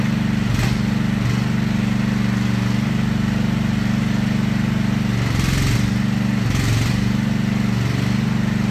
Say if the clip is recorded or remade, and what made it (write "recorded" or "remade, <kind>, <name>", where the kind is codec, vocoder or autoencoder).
recorded